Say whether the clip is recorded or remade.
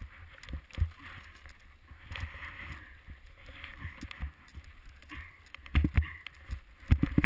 recorded